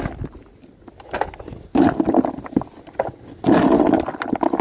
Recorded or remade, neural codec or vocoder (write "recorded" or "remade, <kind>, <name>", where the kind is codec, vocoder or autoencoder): recorded